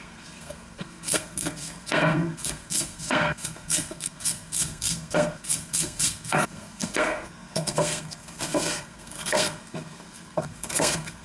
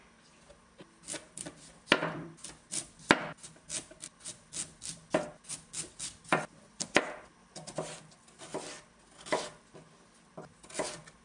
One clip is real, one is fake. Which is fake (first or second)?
first